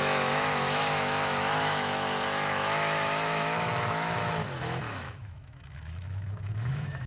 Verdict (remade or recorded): remade